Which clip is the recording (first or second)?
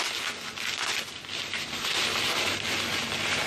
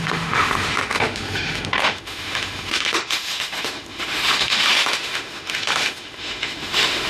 first